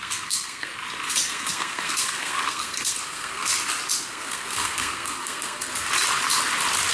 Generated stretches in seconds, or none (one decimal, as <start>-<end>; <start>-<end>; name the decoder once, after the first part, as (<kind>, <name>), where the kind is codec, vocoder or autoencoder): 0.0-0.7 (codec, SNAC); 1.3-3.5; 4.0-5.7